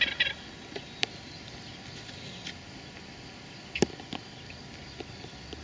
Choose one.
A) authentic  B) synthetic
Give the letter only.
A